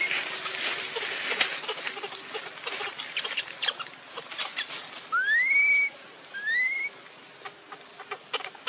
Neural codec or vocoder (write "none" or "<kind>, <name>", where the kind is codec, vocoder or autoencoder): none